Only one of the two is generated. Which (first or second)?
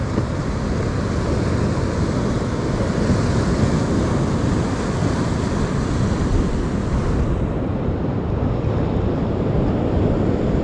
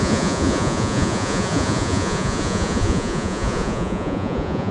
second